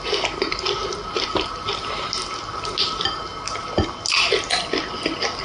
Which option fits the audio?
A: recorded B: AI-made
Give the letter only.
A